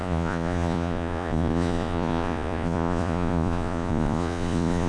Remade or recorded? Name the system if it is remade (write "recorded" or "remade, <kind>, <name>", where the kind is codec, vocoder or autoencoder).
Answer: remade, vocoder, Vocos